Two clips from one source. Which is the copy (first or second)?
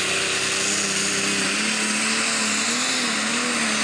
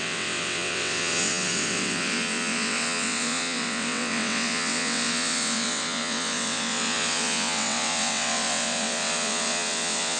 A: second